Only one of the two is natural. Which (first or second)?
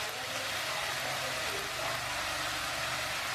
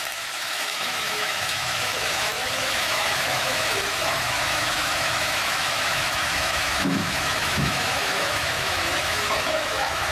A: first